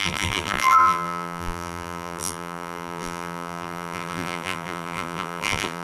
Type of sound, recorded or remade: remade